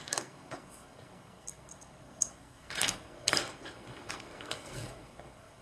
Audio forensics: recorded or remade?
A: remade